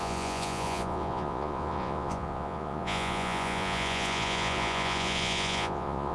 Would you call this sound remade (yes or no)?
yes